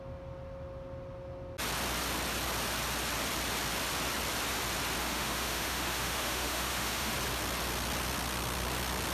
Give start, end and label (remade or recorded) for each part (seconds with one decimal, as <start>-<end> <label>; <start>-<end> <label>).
0.0-5.0 recorded; 5.0-7.1 remade; 7.1-9.1 recorded